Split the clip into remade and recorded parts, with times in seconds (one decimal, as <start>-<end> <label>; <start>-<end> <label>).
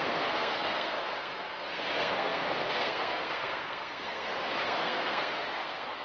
0.0-6.0 remade